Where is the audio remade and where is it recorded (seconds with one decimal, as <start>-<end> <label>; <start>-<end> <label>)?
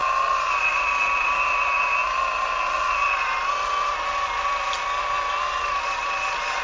0.0-6.6 recorded